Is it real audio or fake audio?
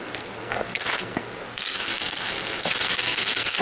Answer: fake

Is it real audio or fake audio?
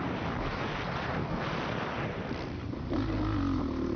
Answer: real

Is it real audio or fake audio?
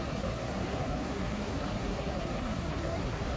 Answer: fake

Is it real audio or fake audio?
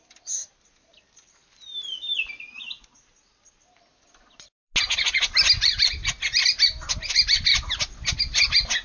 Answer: real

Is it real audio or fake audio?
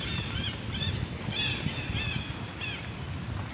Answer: real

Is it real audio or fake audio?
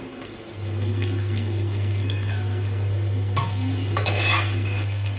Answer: fake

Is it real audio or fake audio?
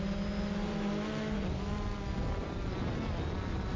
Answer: real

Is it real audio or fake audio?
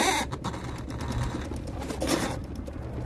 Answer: real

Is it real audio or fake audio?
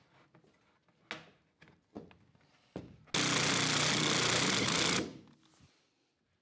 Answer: real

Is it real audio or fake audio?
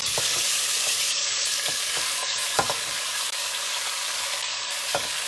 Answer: fake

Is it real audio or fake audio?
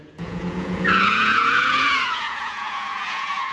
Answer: fake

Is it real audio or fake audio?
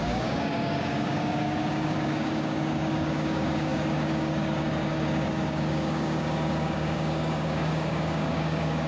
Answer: fake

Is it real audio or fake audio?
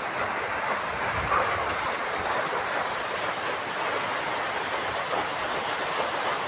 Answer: real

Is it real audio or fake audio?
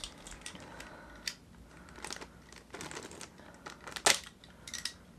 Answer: real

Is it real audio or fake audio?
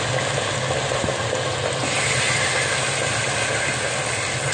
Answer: real